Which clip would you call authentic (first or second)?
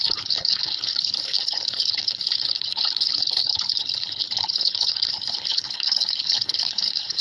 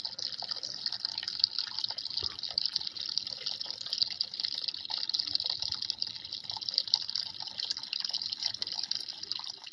second